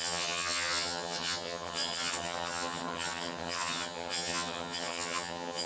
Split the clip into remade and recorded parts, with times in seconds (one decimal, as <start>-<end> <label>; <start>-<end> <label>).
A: 0.0-5.7 remade